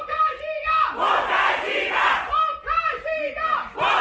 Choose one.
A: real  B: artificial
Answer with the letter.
A